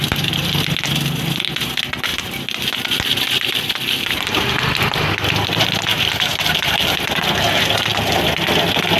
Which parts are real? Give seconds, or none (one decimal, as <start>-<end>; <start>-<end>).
0.0-2.1; 5.3-6.3; 6.8-9.0

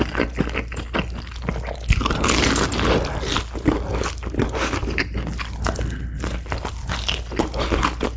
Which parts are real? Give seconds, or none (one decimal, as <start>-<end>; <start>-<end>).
0.0-8.2

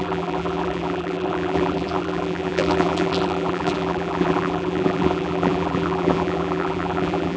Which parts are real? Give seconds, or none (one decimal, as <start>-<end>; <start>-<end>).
none

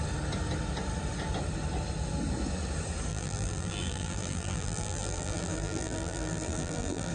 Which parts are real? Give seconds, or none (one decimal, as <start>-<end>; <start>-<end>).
0.0-3.1

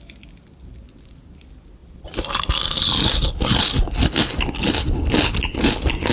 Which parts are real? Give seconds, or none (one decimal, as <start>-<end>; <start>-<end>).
0.0-1.8; 3.5-6.1

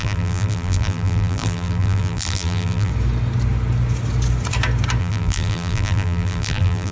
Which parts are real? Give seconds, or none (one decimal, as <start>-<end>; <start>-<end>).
2.9-5.0

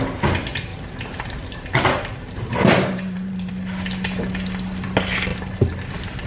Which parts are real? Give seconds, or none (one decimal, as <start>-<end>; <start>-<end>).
0.0-0.7; 3.5-6.3

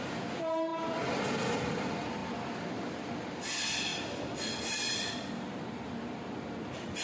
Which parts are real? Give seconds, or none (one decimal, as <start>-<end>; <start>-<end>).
0.0-7.0